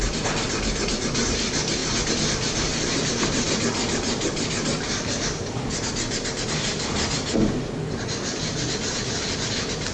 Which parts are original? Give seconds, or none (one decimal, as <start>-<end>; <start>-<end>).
0.0-9.9